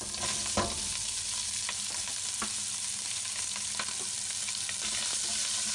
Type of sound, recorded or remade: recorded